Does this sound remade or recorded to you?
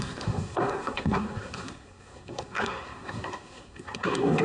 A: remade